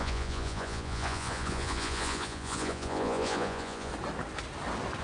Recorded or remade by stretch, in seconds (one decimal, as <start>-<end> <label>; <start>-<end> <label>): 0.0-3.9 remade; 3.9-5.0 recorded